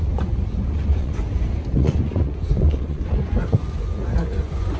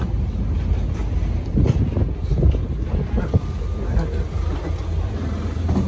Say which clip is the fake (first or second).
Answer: first